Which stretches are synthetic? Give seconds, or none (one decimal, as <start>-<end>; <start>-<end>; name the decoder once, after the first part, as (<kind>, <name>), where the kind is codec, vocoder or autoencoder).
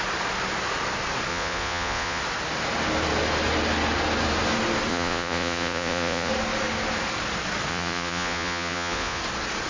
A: 1.3-2.2 (vocoder, Vocos); 4.9-6.3; 7.7-9.2